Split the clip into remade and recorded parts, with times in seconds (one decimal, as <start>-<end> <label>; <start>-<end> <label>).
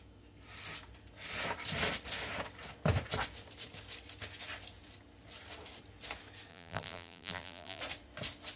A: 0.0-6.5 recorded; 6.5-7.8 remade; 7.8-8.6 recorded